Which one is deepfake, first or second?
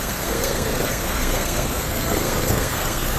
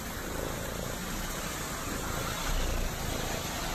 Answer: first